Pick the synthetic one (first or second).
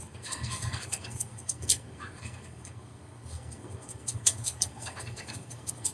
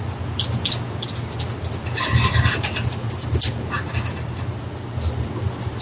first